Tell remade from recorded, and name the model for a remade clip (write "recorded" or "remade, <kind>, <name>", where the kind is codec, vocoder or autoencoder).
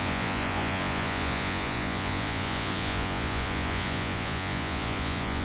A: remade, vocoder, Vocos